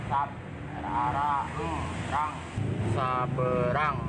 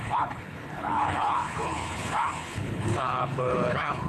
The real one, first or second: first